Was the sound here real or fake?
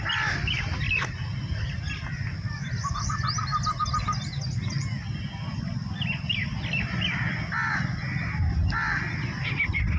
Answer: real